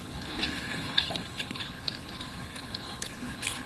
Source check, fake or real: fake